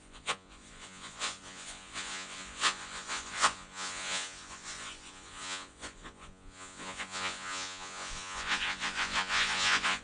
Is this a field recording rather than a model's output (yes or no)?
no